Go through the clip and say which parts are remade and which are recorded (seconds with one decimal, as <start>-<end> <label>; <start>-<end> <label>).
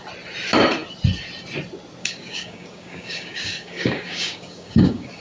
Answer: 0.0-2.0 recorded; 2.0-5.2 remade